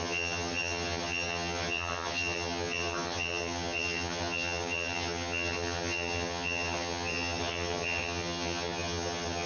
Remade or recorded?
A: remade